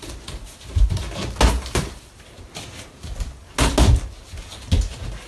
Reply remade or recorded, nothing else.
recorded